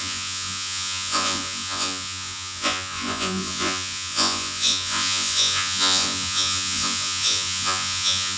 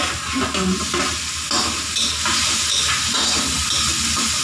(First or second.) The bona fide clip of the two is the second